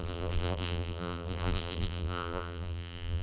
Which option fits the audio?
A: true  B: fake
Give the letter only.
B